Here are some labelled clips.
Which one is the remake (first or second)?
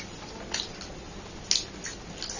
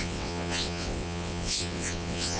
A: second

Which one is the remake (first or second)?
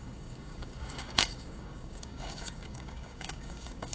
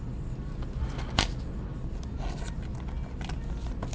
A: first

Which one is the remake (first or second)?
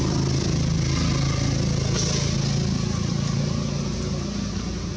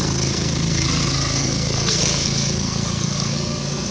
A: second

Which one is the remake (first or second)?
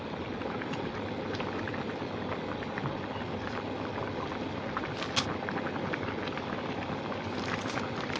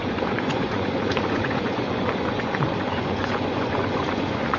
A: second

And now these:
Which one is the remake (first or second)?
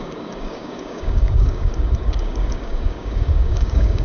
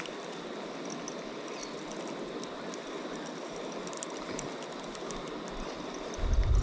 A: first